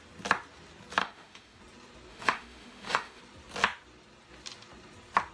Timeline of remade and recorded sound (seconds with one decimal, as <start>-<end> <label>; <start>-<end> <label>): 0.0-1.0 recorded; 1.0-1.6 remade; 1.6-2.1 recorded; 2.1-3.2 remade; 3.2-5.3 recorded